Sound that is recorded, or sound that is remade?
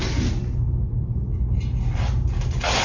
recorded